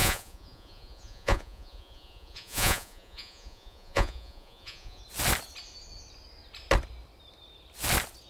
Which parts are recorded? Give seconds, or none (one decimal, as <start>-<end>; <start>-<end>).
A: 5.0-8.3